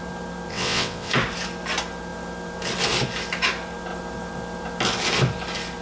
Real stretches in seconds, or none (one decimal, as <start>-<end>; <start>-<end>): 0.0-0.5; 1.1-5.8

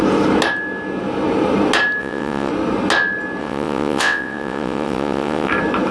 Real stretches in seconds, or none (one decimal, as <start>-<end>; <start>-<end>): 0.0-2.0; 2.5-3.4; 5.5-5.9

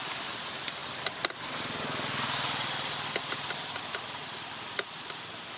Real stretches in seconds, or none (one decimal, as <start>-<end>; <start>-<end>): 0.0-5.6

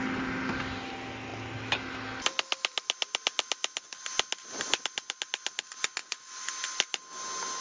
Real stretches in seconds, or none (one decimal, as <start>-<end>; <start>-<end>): 0.0-6.0; 6.5-7.6

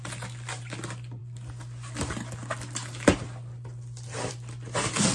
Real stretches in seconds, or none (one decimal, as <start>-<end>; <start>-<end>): 0.0-5.1

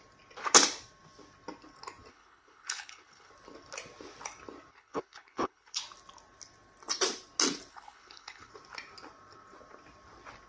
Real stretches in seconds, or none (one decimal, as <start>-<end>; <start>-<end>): 0.0-2.1; 3.3-4.7; 5.8-7.7; 8.5-10.5

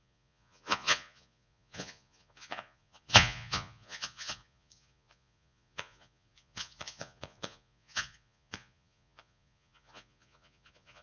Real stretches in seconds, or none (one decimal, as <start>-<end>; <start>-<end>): none

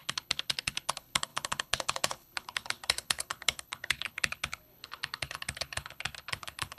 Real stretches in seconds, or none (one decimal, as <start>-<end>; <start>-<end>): none